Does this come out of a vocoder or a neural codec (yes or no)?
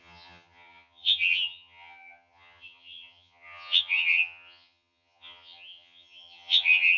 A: yes